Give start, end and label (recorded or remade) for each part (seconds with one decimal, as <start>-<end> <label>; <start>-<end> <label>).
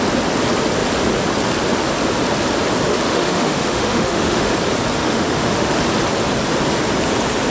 0.0-2.9 recorded; 2.9-4.5 remade; 4.5-5.0 recorded; 5.0-5.8 remade; 5.8-7.5 recorded